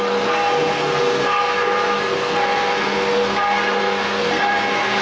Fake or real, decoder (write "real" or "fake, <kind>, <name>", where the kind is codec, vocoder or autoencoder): fake, codec, SNAC